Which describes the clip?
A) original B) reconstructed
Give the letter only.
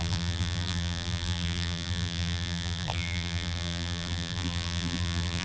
B